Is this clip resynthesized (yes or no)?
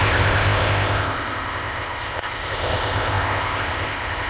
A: yes